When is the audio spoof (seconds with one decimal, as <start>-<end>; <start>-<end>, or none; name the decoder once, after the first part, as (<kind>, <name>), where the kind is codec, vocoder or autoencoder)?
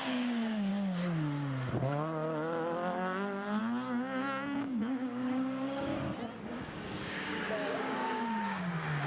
0.0-0.7 (codec, DAC); 3.6-5.9; 6.4-9.1